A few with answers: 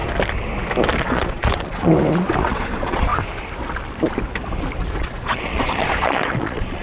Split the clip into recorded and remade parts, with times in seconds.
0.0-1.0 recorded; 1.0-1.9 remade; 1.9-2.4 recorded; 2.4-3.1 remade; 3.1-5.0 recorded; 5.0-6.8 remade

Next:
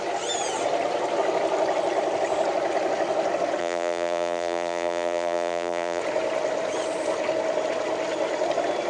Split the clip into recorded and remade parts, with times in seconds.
0.0-3.6 recorded; 3.6-6.0 remade; 6.0-8.9 recorded

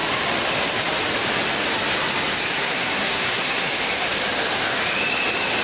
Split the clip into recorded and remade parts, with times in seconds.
0.0-2.6 recorded; 2.6-3.7 remade; 3.7-5.6 recorded

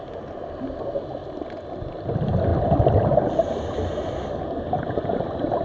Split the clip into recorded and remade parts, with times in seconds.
0.0-5.6 recorded